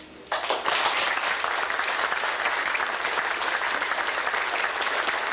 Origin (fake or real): real